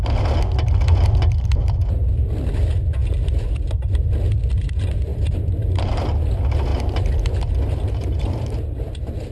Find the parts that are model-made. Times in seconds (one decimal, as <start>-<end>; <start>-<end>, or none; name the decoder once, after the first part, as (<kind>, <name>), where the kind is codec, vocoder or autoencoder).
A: 1.6-2.2 (vocoder, BigVGAN v2); 5.1-6.0; 6.7-8.3